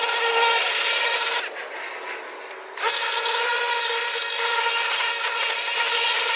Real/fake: real